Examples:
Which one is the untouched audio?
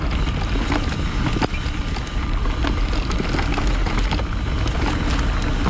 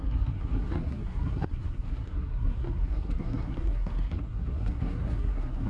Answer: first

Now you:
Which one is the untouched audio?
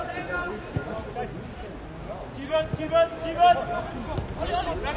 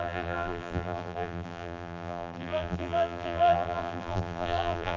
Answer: first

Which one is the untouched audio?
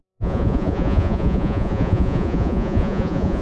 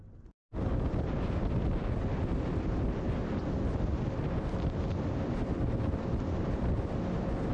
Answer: second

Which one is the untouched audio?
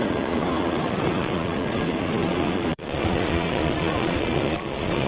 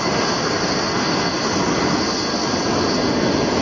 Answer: second